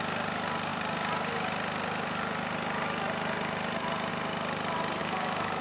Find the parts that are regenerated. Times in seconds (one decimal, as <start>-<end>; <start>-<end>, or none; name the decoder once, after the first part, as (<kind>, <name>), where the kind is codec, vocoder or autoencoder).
5.0-5.6 (codec, DAC)